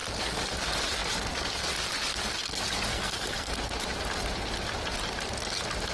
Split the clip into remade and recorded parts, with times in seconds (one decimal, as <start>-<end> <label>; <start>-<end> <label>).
0.0-2.9 recorded; 2.9-3.5 remade; 3.5-5.9 recorded